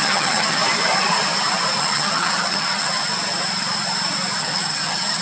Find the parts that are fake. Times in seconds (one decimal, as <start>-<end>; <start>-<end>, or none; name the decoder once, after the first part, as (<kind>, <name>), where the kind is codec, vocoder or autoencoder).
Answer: 0.0-0.6 (vocoder, HiFi-GAN); 1.8-3.0; 4.4-5.2